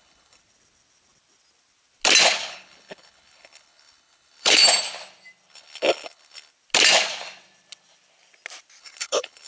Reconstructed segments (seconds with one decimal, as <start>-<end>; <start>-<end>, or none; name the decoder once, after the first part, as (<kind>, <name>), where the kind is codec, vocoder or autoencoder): 0.0-0.4 (codec, HILCodec); 2.5-4.6; 5.5-6.5; 8.8-9.5